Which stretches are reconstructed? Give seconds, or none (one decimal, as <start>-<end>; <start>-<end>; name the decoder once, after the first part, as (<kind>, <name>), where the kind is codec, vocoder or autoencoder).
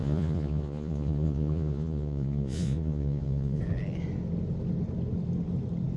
0.0-3.6 (vocoder, Vocos)